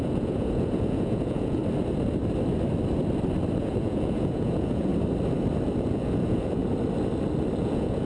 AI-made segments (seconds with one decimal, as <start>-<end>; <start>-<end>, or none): 0.0-1.6; 3.6-4.9; 5.8-6.6; 7.6-8.0